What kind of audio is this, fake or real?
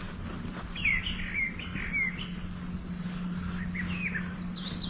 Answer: real